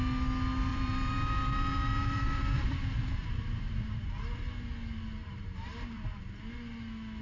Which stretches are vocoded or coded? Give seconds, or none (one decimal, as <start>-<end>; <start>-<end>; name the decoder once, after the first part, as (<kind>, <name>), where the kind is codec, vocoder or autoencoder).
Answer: 0.7-4.1 (vocoder, BigVGAN v2); 5.2-6.2